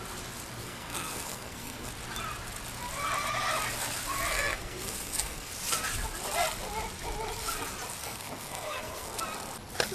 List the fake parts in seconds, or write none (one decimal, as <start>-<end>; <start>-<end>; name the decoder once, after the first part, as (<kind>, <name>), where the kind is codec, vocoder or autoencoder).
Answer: 0.6-1.9 (codec, SNAC); 4.3-5.5; 8.0-9.2